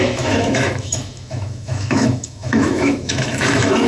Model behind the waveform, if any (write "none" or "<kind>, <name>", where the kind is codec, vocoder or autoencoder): autoencoder, DAC-VAE